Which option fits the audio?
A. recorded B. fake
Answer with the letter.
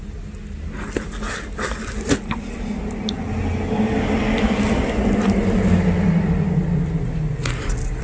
A